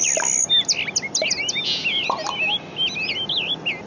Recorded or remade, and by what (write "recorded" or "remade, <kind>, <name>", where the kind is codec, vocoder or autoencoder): recorded